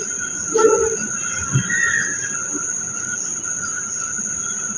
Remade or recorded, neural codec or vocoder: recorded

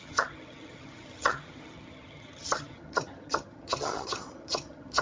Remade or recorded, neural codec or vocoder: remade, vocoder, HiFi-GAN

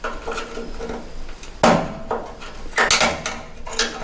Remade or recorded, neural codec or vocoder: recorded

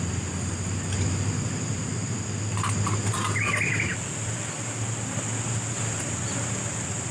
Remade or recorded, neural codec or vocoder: remade, vocoder, BigVGAN v2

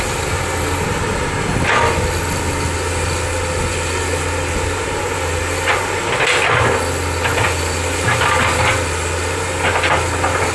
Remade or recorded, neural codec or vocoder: recorded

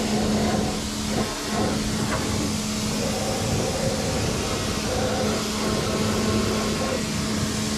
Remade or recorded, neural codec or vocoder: recorded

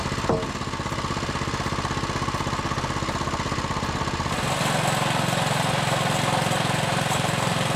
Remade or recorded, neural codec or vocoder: recorded